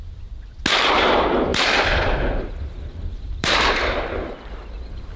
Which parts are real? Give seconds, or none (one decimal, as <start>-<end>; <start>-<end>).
0.0-1.5; 4.6-5.2